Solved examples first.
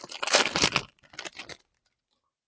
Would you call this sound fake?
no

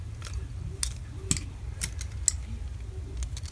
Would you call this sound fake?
no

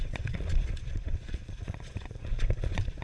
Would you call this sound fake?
yes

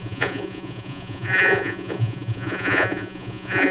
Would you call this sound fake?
yes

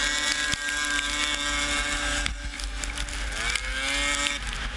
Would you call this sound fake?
no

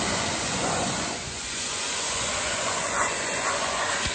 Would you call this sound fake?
yes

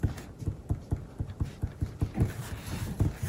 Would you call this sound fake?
no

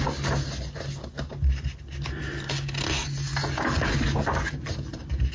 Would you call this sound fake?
no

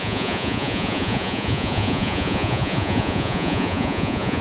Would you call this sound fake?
yes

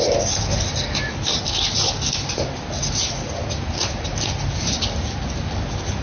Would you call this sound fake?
no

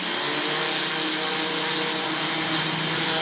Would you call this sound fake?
no